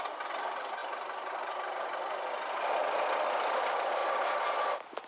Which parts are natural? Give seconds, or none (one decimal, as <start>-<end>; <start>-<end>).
0.0-0.8; 2.7-5.1